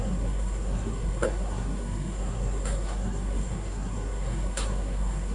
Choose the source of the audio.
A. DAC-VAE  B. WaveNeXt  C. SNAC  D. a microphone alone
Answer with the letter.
C